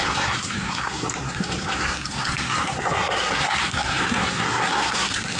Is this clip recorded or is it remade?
remade